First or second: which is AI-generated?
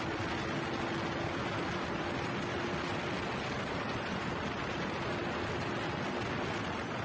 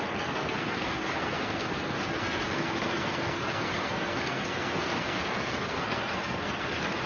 second